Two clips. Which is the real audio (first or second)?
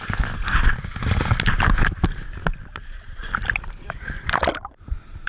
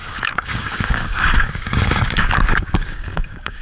first